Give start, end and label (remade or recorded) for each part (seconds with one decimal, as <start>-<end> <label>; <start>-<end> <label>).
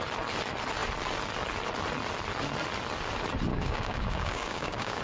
0.0-3.5 recorded; 3.5-5.0 remade